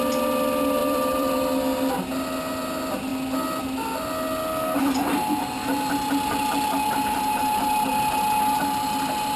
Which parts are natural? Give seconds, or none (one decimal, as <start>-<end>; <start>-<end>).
0.0-0.8; 1.6-9.4